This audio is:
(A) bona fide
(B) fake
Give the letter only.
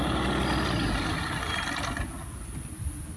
A